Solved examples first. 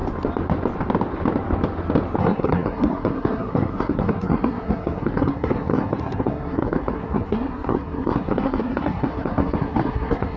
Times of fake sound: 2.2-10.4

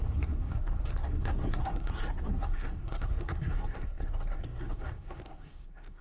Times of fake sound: 0.0-6.0

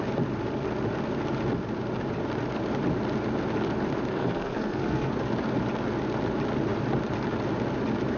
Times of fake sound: 4.1-5.1